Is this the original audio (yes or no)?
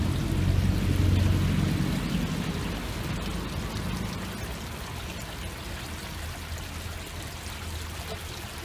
yes